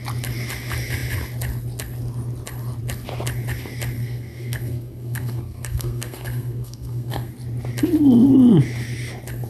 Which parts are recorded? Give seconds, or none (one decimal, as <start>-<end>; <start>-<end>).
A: 0.0-4.0; 7.3-9.5